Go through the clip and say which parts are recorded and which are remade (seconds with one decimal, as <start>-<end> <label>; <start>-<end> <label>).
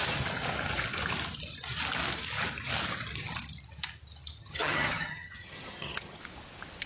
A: 0.0-4.4 recorded; 4.4-6.2 remade; 6.2-6.9 recorded